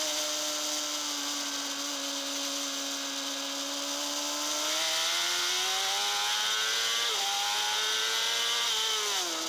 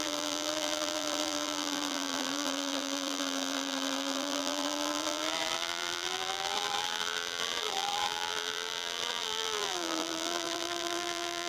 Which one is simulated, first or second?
second